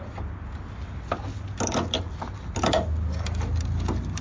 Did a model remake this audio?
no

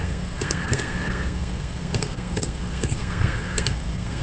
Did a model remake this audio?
yes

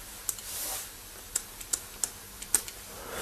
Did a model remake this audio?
no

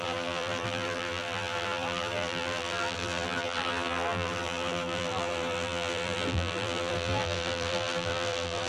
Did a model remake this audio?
yes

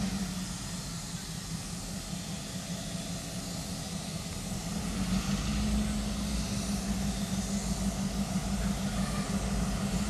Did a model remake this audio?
no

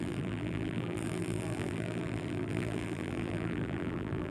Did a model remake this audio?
yes